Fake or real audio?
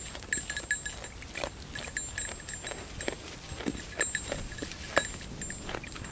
real